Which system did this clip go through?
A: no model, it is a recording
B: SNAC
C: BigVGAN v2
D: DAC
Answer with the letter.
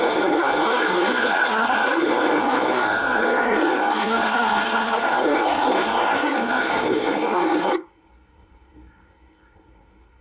B